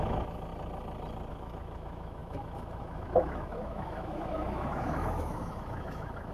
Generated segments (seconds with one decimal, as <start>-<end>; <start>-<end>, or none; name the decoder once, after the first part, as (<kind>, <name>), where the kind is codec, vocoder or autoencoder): 0.0-0.5 (autoencoder, DAC-VAE); 1.3-6.3